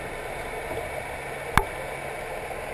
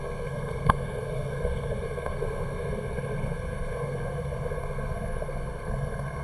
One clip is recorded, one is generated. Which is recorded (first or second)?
first